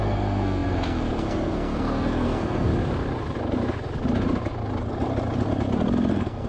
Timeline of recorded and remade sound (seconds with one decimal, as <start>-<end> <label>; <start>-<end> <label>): 0.0-2.7 remade; 2.7-6.1 recorded; 6.1-6.5 remade